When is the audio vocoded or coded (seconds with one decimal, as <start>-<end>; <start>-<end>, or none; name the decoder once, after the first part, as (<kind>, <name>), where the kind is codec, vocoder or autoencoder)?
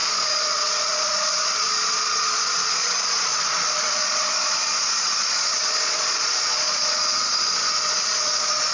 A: 0.0-8.7 (vocoder, Vocos)